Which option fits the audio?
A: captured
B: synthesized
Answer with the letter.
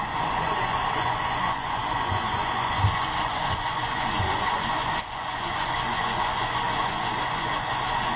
B